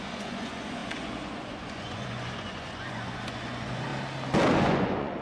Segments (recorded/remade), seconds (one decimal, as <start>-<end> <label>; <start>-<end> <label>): 0.0-3.9 remade; 3.9-4.5 recorded; 4.5-5.2 remade